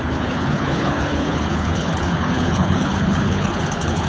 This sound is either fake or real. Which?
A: fake